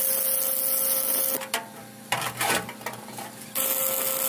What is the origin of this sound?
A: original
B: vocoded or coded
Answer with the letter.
A